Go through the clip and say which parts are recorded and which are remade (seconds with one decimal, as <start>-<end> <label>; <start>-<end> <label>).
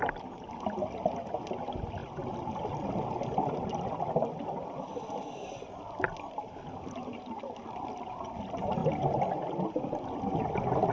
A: 0.0-10.9 recorded